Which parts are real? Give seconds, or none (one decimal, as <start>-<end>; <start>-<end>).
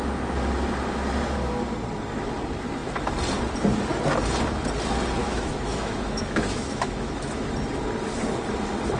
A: 0.0-5.2; 7.4-9.0